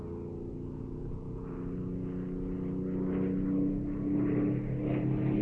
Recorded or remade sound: recorded